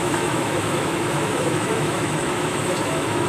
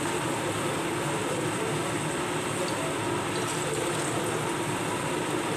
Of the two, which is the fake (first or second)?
first